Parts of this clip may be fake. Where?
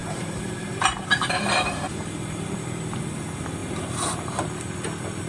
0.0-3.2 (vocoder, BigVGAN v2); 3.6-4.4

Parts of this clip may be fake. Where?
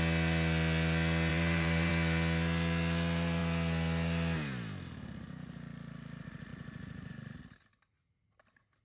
1.3-1.9 (vocoder, BigVGAN v2); 6.5-7.1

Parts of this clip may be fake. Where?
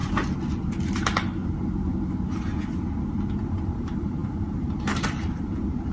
3.5-5.9 (vocoder, BigVGAN v2)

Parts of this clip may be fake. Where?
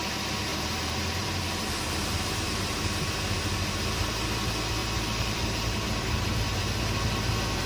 0.5-3.7 (vocoder, BigVGAN v2); 4.8-6.6